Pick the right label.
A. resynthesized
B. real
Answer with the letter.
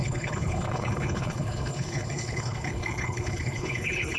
A